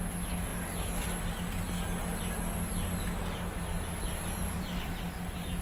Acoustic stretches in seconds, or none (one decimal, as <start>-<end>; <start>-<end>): 0.0-3.5; 4.9-5.6